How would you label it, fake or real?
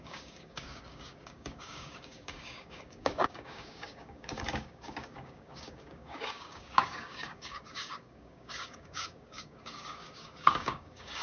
fake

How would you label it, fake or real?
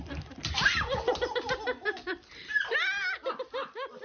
real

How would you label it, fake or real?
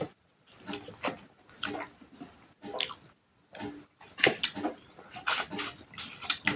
real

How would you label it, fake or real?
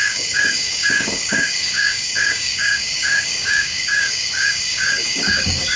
fake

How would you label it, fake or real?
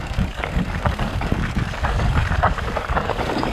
fake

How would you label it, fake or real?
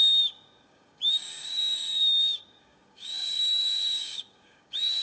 fake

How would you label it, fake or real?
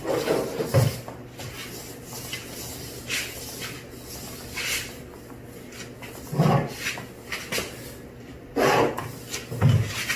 real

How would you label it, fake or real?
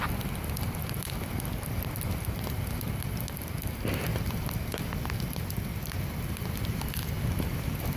real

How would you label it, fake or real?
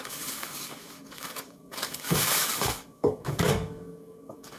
fake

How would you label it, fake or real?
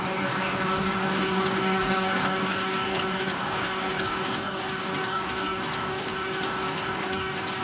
fake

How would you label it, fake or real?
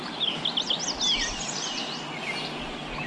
real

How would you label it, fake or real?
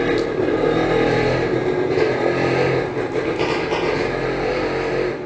real